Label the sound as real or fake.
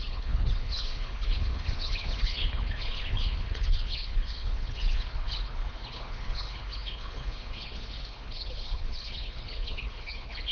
fake